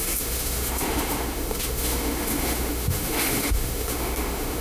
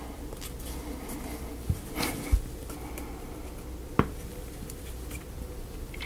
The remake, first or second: first